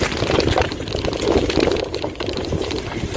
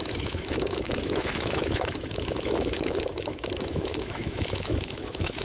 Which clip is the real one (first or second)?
first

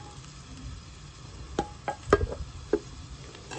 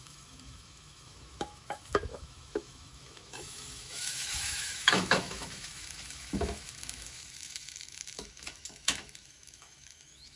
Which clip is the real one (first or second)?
first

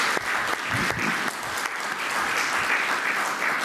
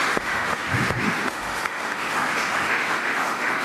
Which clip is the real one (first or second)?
first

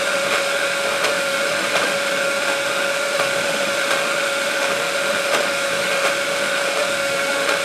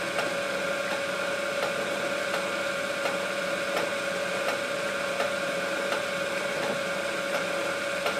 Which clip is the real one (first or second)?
second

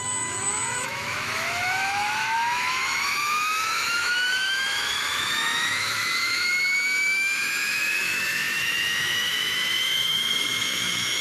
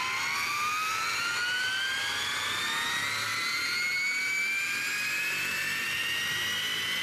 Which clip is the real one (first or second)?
second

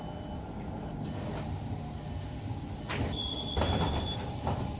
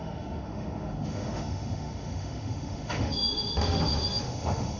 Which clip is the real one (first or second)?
first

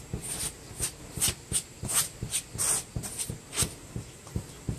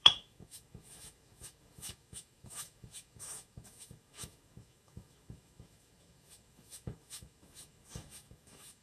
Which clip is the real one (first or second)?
first